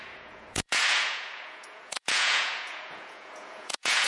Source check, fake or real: fake